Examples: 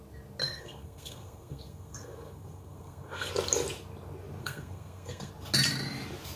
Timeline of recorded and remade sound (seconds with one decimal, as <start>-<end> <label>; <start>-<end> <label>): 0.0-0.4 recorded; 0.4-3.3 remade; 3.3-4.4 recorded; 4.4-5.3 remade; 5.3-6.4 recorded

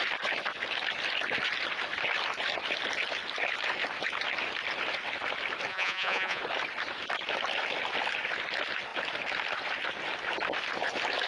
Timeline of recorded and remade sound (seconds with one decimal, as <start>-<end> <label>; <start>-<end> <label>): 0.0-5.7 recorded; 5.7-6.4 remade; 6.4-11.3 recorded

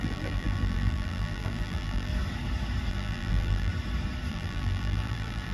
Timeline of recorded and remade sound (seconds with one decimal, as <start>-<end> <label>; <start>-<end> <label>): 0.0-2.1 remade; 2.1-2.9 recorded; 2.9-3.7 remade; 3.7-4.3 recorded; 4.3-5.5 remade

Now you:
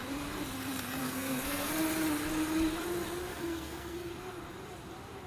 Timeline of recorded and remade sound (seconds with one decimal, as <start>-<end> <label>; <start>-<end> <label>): 0.0-1.0 recorded; 1.0-1.7 remade; 1.7-3.3 recorded; 3.3-4.1 remade; 4.1-5.3 recorded